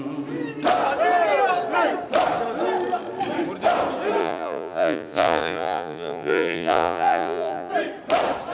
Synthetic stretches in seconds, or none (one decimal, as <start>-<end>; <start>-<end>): 4.2-7.7